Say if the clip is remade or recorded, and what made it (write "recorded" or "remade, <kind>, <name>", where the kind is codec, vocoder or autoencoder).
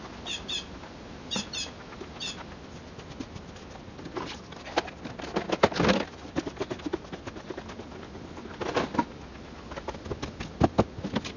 recorded